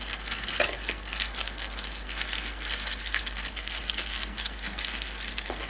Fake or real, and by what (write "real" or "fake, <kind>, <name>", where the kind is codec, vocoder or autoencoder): fake, codec, SNAC